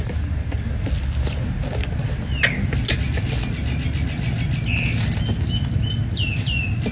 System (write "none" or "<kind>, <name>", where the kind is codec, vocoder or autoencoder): none